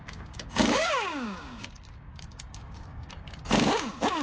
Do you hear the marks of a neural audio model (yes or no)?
yes